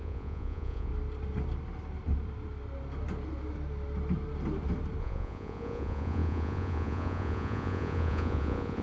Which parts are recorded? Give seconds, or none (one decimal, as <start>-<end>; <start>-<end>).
0.9-5.0